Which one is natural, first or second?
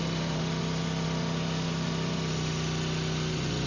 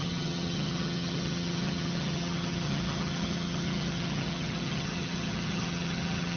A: first